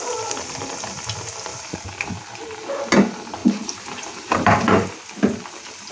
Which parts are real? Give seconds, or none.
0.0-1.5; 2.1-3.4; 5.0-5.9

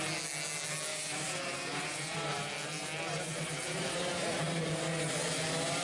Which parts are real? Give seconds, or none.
0.0-0.9; 4.4-5.8

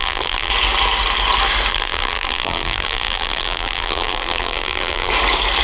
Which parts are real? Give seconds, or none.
0.5-1.7; 5.1-5.6

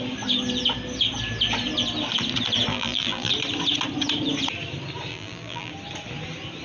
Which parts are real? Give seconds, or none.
0.0-2.7; 3.3-5.1; 5.7-6.6